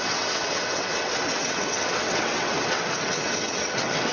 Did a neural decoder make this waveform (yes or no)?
yes